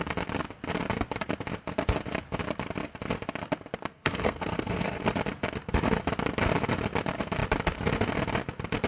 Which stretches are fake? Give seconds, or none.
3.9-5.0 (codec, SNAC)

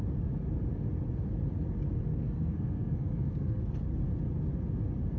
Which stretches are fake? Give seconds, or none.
2.1-3.6 (codec, SNAC)

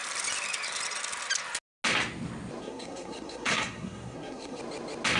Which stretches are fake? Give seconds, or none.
2.6-4.6 (codec, SNAC)

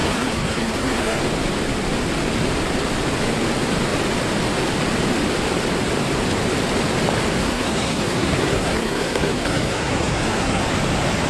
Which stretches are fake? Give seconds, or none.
0.0-1.2 (codec, SNAC); 7.4-10.6

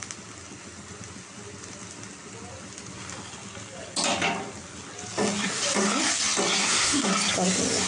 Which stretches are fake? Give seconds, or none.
6.6-7.1 (codec, SNAC)

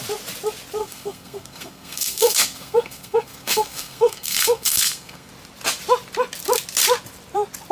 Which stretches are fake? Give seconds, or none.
0.8-5.3 (codec, SNAC)

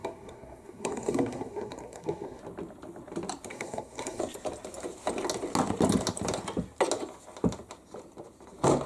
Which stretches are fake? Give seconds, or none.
0.0-2.4 (codec, SNAC); 3.5-4.2

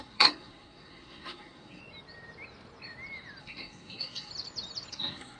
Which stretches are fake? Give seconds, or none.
0.0-1.8 (codec, SNAC); 3.4-4.3; 4.9-5.4